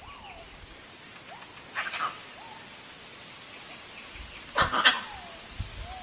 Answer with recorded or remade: recorded